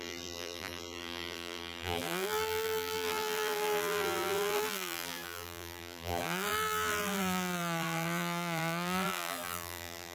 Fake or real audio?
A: fake